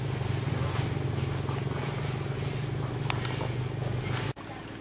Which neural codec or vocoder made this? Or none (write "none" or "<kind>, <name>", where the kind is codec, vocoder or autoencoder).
none